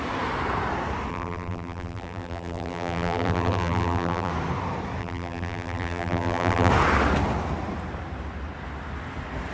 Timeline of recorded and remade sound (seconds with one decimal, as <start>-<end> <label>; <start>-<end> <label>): 0.0-1.1 recorded; 1.1-4.3 remade; 4.3-5.0 recorded; 5.0-6.7 remade; 6.7-9.5 recorded